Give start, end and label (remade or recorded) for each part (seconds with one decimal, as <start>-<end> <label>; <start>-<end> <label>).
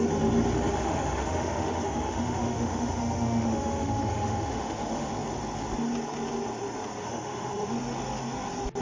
0.0-0.8 recorded; 0.8-5.1 remade; 5.1-7.0 recorded; 7.0-7.7 remade; 7.7-8.8 recorded